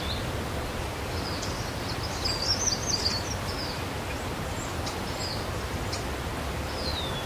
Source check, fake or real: real